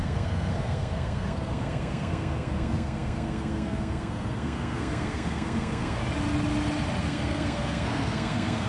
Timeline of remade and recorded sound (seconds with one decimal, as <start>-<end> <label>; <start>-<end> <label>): 0.0-6.0 remade; 6.0-7.0 recorded; 7.0-8.7 remade